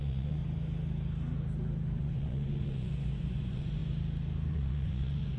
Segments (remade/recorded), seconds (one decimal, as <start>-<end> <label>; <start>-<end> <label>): 0.0-0.4 remade; 0.4-2.0 recorded; 2.0-3.8 remade; 3.8-4.5 recorded; 4.5-5.4 remade